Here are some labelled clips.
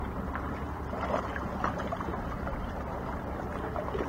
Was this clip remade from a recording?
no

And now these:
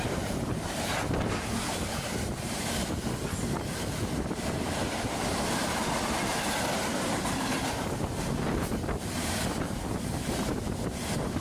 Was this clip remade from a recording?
yes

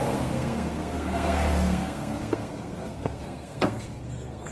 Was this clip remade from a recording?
yes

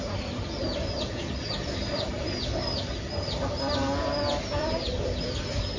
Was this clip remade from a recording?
yes